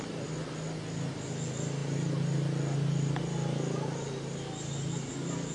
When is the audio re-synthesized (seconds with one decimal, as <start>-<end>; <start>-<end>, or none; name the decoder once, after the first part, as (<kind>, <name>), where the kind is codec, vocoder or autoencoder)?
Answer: none